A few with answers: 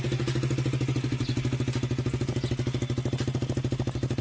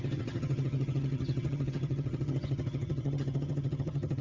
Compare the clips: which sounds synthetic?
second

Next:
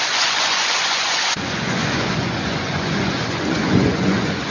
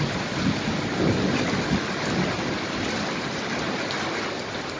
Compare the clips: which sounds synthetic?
first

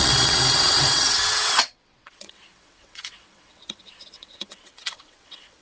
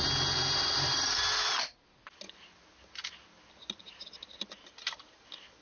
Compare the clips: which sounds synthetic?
first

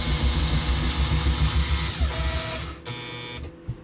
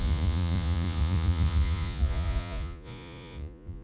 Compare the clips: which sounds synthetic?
second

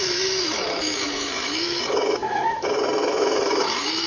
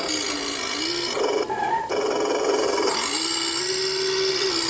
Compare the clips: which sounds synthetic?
first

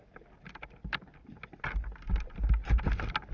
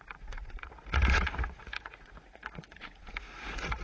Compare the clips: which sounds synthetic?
second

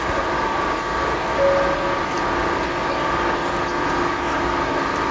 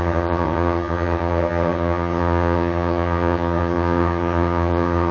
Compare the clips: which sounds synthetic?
second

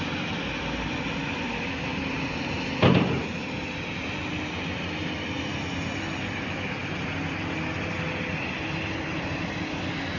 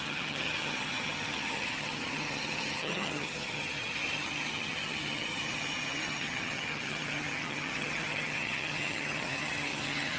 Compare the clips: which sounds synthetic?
second